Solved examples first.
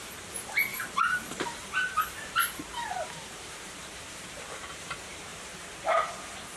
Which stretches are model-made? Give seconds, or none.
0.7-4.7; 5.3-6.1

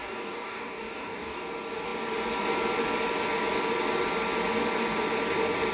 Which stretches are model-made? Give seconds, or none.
0.0-1.4

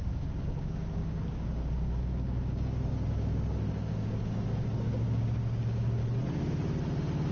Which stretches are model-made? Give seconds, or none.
0.0-6.0

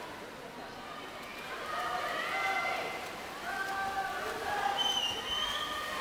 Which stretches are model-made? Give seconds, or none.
none